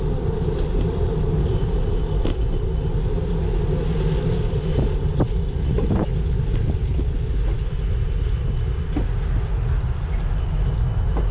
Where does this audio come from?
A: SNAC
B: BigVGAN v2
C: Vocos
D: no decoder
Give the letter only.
D